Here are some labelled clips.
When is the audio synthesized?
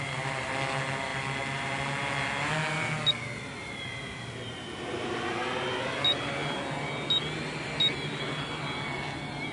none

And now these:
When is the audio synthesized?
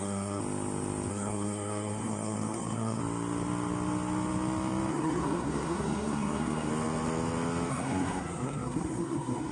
0.0-0.4; 1.1-3.0; 4.9-6.7; 7.7-9.5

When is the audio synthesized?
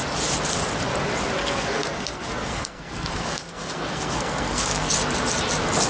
1.4-4.9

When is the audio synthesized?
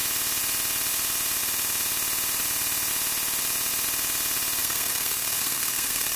4.6-6.2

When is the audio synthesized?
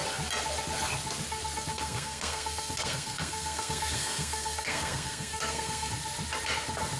1.7-5.9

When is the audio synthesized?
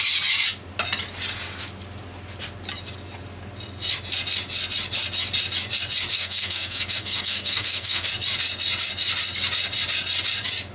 6.1-8.1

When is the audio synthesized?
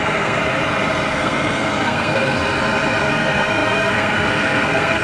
0.0-0.4; 1.1-2.4; 3.0-5.0